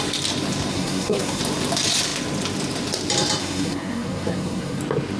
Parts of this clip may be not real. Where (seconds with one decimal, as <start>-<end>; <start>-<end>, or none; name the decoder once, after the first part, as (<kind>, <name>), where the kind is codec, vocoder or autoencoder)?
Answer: 0.7-1.4 (codec, SNAC); 3.4-4.8